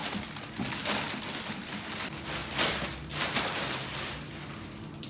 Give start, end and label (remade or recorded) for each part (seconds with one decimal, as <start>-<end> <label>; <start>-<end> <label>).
0.0-5.1 recorded

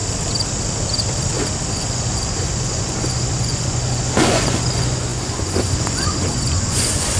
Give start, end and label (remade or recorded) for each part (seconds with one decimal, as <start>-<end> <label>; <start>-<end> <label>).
0.0-1.7 recorded; 1.7-7.2 remade

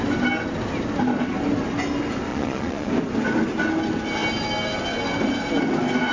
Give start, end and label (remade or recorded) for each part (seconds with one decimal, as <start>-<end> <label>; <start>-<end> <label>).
0.0-2.3 recorded; 2.3-2.9 remade; 2.9-6.1 recorded

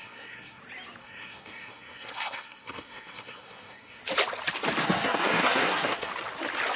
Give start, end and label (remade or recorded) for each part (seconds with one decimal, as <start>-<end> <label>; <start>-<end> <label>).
0.0-0.6 remade; 0.6-1.0 recorded; 1.0-4.0 remade; 4.0-4.8 recorded; 4.8-6.1 remade; 6.1-6.8 recorded